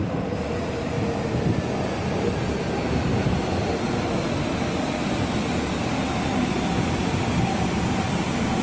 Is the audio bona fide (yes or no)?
yes